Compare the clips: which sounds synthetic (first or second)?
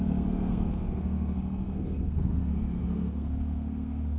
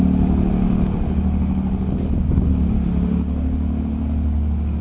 first